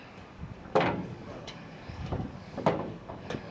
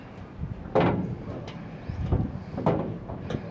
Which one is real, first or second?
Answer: second